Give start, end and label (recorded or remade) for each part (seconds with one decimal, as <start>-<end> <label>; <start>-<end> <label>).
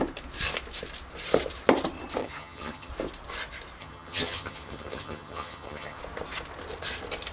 0.0-2.2 recorded; 2.2-2.9 remade; 2.9-3.8 recorded; 3.8-6.0 remade; 6.0-7.3 recorded